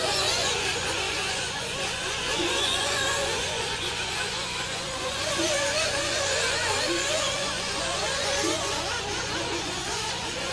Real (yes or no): no